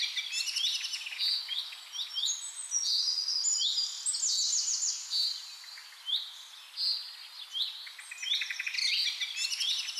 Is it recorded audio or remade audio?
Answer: recorded